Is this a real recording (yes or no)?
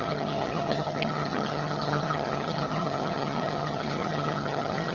no